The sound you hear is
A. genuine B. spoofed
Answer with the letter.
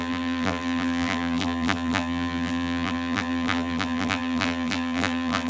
B